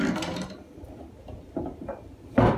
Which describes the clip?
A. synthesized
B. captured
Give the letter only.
B